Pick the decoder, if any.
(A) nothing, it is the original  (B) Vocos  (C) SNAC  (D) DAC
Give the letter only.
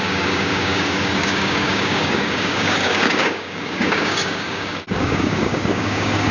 D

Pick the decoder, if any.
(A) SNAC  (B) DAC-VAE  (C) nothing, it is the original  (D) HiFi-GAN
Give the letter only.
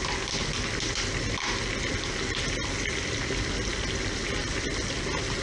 C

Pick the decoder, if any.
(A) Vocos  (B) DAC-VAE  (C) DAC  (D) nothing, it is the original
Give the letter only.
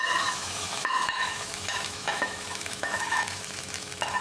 B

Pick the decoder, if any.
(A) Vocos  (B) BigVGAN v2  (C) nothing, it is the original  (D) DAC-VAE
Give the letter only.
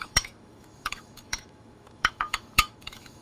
D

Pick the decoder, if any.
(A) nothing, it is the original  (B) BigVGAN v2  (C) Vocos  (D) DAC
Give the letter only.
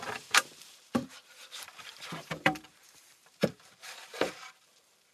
B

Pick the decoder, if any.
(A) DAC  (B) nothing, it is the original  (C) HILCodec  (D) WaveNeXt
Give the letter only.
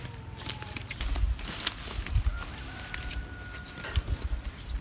B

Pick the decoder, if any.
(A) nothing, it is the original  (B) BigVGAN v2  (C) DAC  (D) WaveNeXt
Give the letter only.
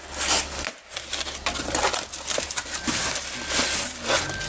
A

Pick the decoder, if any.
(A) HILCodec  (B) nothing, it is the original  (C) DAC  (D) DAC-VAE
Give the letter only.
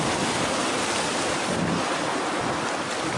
B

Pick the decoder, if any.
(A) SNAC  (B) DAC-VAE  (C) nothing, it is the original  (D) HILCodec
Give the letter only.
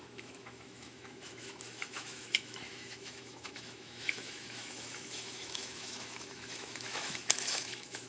B